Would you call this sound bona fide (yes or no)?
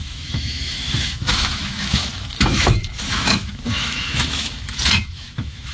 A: no